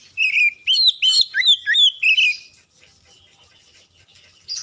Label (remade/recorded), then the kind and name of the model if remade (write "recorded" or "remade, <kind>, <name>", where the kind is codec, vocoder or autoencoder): recorded